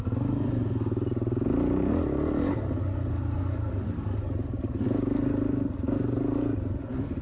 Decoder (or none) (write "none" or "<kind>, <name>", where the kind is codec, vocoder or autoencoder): none